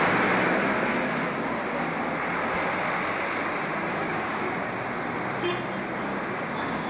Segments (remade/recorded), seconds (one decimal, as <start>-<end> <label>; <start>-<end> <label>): 0.0-3.9 recorded; 3.9-4.4 remade; 4.4-6.1 recorded; 6.1-6.9 remade